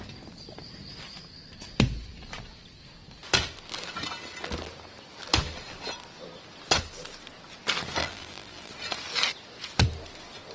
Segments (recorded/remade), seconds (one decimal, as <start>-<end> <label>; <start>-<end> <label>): 0.0-8.0 recorded; 8.0-8.7 remade; 8.7-10.5 recorded